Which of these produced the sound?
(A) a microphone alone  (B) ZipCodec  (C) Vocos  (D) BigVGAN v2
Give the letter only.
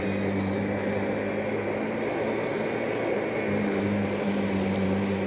A